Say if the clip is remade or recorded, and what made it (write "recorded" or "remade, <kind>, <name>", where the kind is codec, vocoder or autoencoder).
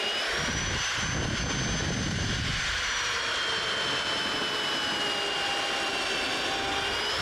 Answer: recorded